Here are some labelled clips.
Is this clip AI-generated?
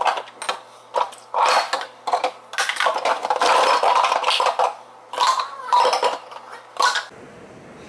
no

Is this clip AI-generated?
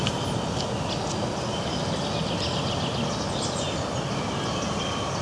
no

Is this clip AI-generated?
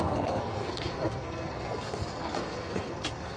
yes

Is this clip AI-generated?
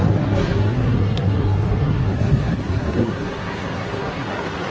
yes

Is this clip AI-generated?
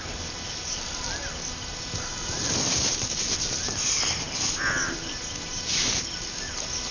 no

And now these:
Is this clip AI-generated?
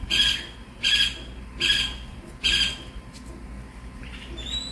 no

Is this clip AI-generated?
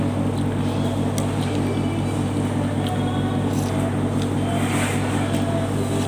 no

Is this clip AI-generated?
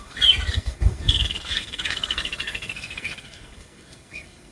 yes